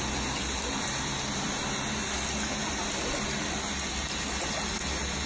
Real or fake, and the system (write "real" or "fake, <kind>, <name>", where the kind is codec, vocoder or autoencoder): real